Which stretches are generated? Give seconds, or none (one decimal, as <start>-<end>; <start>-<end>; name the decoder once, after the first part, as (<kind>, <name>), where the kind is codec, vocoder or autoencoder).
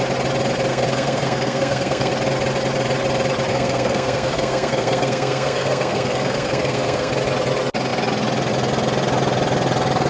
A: 0.7-2.1 (codec, SNAC); 3.5-7.1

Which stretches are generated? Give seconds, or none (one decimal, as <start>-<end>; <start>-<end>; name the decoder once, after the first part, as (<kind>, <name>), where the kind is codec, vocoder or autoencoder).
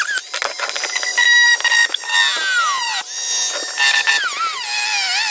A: none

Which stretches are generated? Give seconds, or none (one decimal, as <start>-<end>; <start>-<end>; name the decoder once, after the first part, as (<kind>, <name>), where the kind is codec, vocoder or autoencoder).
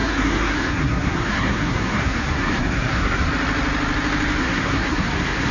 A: 0.0-3.3 (codec, SNAC); 4.4-5.5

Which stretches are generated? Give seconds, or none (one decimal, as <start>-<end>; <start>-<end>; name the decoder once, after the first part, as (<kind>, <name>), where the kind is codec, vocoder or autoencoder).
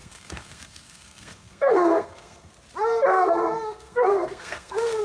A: 0.0-2.5 (codec, SNAC); 3.1-5.0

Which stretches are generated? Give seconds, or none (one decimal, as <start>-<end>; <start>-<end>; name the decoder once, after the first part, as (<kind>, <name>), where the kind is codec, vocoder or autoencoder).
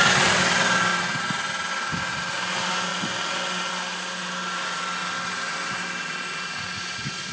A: none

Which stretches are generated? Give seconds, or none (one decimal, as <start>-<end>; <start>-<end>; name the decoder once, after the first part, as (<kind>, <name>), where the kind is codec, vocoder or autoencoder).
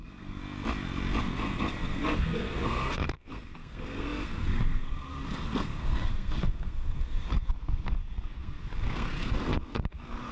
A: 0.0-0.4 (codec, SNAC); 1.2-10.3